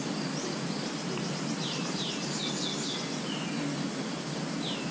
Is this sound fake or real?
real